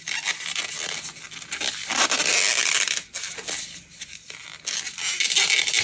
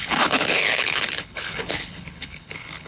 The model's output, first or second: second